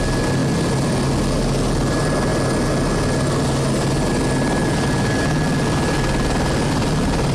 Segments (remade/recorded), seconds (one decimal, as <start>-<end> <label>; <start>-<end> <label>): 0.0-7.3 recorded